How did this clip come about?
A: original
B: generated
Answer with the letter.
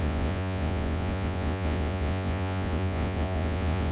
B